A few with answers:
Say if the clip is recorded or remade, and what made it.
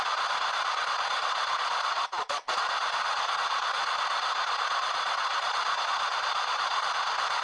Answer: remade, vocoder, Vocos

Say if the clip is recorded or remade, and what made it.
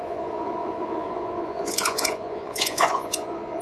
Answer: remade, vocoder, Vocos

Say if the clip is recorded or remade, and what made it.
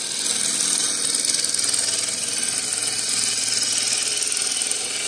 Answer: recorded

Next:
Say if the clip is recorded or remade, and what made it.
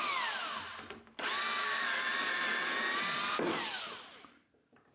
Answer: recorded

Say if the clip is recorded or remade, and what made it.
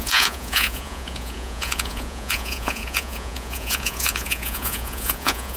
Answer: remade, vocoder, Vocos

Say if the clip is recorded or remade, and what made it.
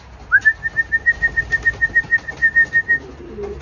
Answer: recorded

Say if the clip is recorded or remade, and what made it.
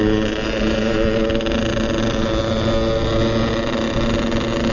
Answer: recorded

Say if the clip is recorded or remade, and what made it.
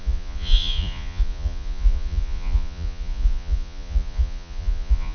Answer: remade, vocoder, Vocos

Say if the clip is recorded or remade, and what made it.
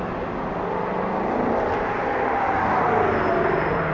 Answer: recorded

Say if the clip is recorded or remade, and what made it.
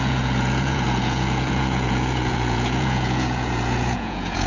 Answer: remade, vocoder, Vocos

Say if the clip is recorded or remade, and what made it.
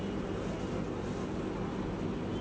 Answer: recorded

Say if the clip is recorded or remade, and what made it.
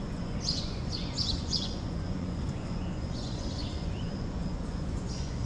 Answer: remade, vocoder, Vocos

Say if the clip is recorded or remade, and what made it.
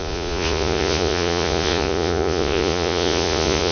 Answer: remade, vocoder, Vocos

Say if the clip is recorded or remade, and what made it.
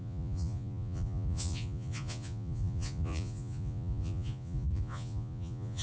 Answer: remade, vocoder, Vocos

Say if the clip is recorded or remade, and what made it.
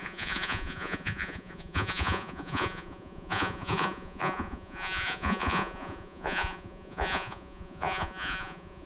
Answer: remade, vocoder, Vocos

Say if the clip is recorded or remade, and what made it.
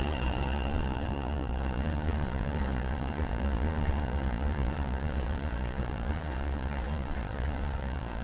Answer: remade, vocoder, Vocos